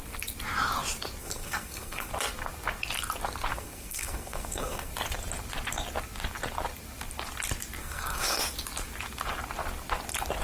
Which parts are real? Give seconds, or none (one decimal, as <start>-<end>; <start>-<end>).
0.0-1.2; 2.1-3.5; 4.9-7.8; 8.4-10.4